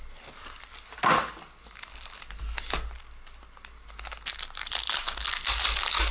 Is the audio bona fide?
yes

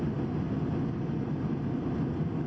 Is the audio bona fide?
yes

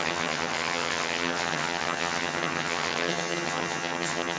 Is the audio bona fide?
no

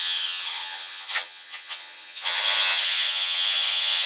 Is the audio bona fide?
no